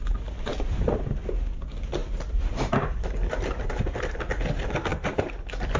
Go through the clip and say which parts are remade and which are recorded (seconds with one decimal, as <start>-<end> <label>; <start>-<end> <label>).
0.0-0.5 recorded; 0.5-1.0 remade; 1.0-2.0 recorded; 2.0-4.2 remade; 4.2-4.9 recorded; 4.9-5.8 remade